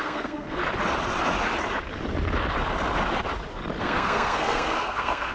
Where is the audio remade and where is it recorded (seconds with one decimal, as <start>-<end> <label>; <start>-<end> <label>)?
0.0-0.6 remade; 0.6-3.8 recorded; 3.8-5.3 remade